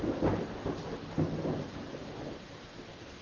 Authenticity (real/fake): real